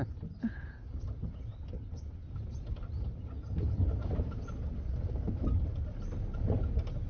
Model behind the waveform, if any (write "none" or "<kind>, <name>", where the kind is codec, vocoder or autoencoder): none